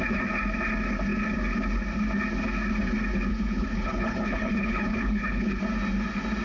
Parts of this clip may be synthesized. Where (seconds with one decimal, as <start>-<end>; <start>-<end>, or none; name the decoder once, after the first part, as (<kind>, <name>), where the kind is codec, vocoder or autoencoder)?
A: 3.3-5.6 (codec, HILCodec)